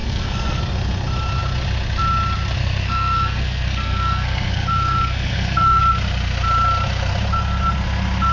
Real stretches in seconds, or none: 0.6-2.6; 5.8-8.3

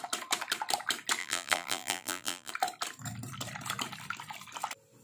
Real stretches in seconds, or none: 0.0-1.2; 2.5-5.0

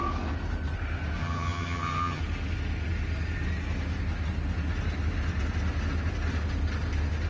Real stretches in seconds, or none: 0.0-1.2; 2.2-7.3

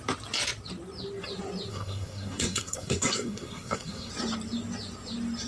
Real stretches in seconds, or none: 0.0-1.7; 4.1-5.5